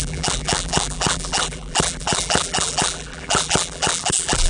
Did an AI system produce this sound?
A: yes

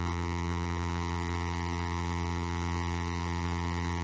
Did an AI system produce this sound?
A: yes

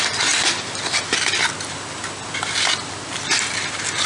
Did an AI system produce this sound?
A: no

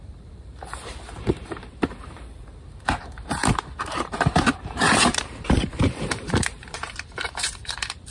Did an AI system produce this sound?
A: yes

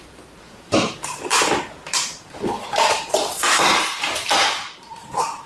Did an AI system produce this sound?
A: yes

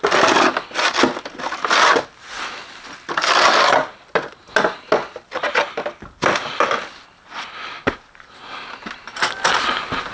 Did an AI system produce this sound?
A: no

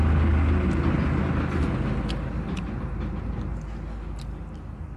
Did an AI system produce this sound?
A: no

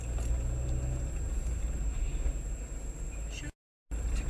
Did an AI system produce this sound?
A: no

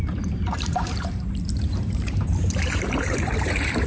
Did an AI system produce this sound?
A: yes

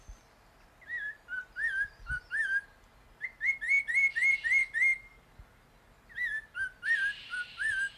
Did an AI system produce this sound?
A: no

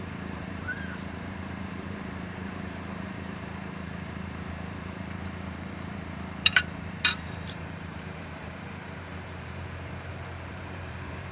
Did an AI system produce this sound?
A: yes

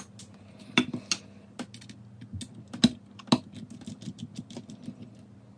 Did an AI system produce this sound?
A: no